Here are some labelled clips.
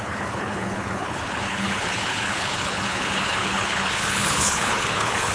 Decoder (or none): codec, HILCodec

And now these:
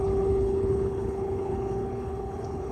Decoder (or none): codec, HILCodec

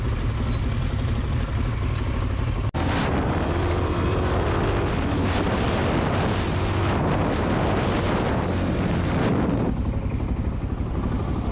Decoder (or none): none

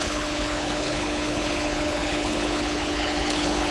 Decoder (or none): codec, HILCodec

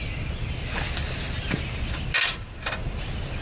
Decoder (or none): none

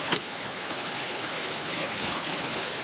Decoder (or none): codec, HILCodec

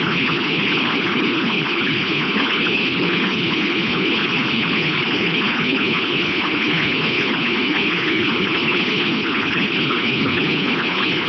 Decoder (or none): codec, HILCodec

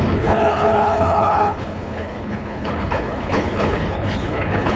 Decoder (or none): codec, HILCodec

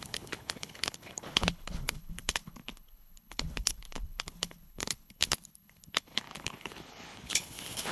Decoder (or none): codec, HILCodec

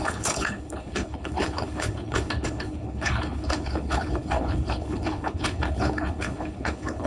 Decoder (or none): codec, HILCodec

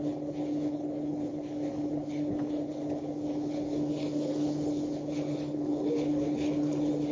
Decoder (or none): codec, HILCodec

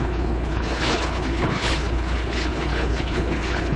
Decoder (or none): codec, HILCodec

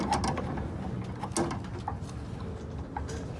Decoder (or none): none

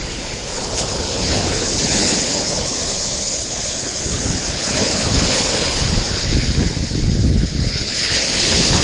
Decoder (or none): codec, HILCodec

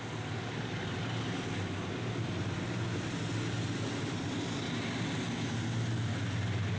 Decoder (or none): none